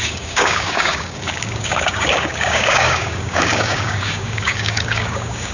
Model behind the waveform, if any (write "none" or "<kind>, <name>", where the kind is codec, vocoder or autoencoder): codec, DAC